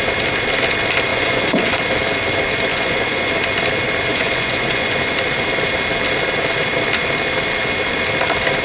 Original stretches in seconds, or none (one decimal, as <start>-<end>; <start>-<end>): 0.0-1.1; 1.8-2.7; 3.3-4.1; 5.1-8.6